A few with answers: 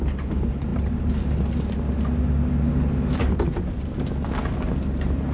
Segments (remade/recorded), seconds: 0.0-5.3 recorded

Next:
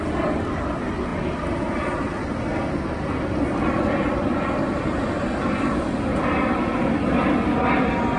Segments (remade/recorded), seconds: 0.0-1.1 recorded; 1.1-1.9 remade; 1.9-6.7 recorded; 6.7-7.3 remade; 7.3-8.2 recorded

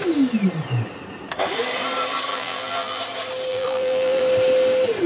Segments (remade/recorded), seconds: 0.0-2.3 recorded; 2.3-3.0 remade; 3.0-3.5 recorded; 3.5-4.2 remade; 4.2-5.1 recorded

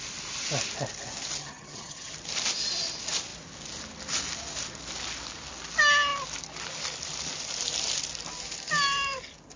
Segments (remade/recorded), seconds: 0.0-1.4 recorded; 1.4-2.1 remade; 2.1-9.6 recorded

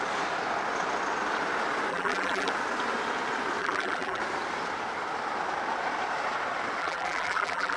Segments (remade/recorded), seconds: 0.0-1.9 recorded; 1.9-2.5 remade; 2.5-3.6 recorded; 3.6-4.2 remade; 4.2-6.8 recorded; 6.8-7.8 remade

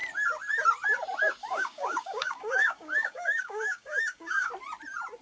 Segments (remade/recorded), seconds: 0.0-1.4 recorded; 1.4-4.5 remade; 4.5-5.2 recorded

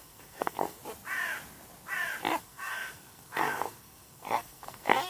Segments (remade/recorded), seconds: 0.0-0.8 remade; 0.8-2.4 recorded; 2.4-5.1 remade